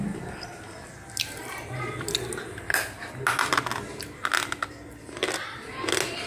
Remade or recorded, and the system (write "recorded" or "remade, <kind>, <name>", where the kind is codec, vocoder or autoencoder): recorded